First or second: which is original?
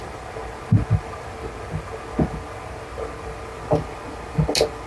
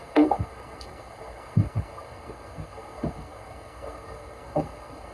first